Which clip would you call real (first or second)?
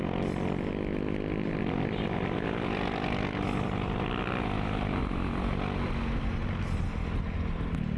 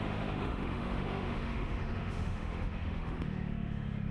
first